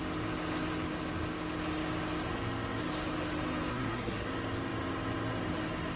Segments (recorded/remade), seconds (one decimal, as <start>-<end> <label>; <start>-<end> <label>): 0.0-3.7 recorded; 3.7-4.3 remade; 4.3-6.0 recorded

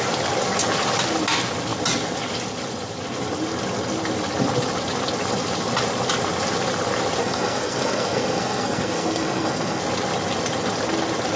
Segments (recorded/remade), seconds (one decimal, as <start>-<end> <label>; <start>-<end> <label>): 0.0-7.2 recorded; 7.2-9.8 remade; 9.8-11.4 recorded